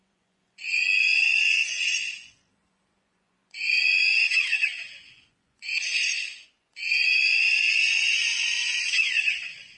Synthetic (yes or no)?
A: yes